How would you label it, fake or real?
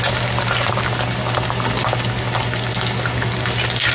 real